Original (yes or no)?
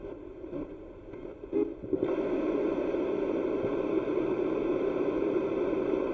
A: no